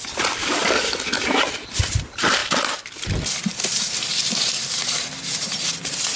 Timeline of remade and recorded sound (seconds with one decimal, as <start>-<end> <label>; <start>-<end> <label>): 0.0-0.4 recorded; 0.4-1.3 remade; 1.3-6.2 recorded